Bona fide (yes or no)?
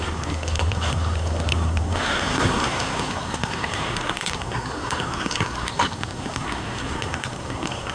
no